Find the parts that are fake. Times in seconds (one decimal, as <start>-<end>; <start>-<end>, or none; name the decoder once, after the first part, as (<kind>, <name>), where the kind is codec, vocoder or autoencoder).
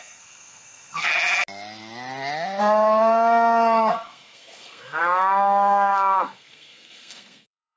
0.0-1.1 (codec, SNAC); 2.6-7.8